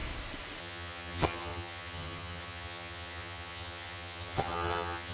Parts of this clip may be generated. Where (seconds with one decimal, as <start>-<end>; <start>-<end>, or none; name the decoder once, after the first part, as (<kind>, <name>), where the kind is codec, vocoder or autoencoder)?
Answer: 0.6-5.1 (vocoder, HiFi-GAN)